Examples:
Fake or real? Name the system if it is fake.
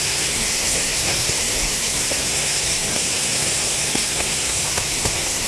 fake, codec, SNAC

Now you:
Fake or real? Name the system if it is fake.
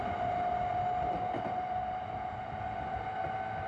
real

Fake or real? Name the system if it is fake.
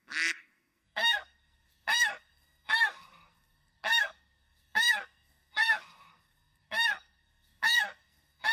fake, codec, SNAC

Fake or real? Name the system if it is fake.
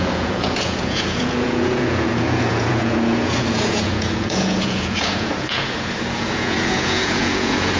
fake, vocoder, Vocos